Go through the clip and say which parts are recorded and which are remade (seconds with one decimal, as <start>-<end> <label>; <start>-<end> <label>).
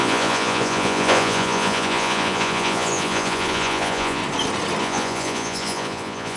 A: 0.0-4.2 remade; 4.2-4.8 recorded; 4.8-6.4 remade